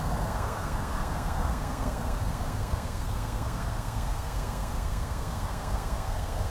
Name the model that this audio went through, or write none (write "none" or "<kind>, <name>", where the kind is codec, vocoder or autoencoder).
codec, SNAC